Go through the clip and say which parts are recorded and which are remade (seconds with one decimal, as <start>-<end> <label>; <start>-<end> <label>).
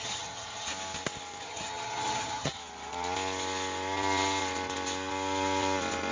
0.0-0.7 remade; 0.7-1.4 recorded; 1.4-2.6 remade; 2.6-6.1 recorded